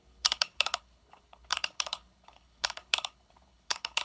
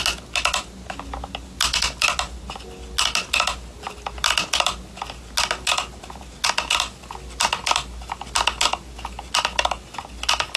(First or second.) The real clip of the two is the second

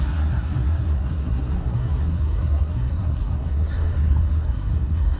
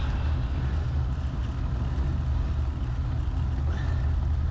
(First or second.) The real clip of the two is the second